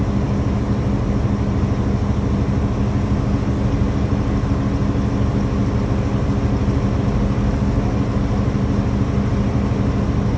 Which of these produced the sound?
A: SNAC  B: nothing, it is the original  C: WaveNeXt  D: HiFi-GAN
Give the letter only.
B